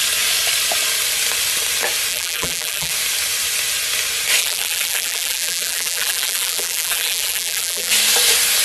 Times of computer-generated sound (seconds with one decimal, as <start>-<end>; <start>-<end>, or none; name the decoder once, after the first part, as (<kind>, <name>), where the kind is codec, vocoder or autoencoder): 2.1-2.9 (vocoder, BigVGAN v2); 4.4-7.9